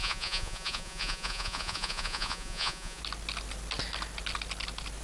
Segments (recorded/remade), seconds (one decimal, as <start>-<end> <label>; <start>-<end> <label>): 0.0-3.0 remade; 3.0-5.0 recorded